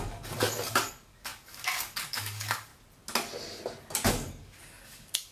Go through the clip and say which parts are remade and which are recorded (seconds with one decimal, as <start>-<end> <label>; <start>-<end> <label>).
0.0-2.7 remade; 2.7-4.1 recorded; 4.1-5.3 remade